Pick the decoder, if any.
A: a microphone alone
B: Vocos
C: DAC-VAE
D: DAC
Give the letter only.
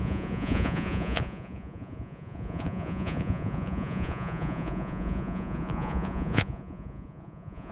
B